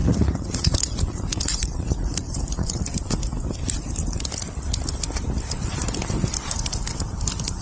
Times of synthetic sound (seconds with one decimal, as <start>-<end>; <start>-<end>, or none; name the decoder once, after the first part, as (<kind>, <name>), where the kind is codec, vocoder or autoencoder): 0.0-2.8 (vocoder, Vocos)